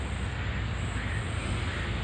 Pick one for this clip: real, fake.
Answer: real